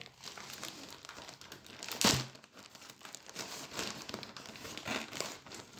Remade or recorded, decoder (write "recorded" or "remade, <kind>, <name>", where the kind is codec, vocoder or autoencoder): recorded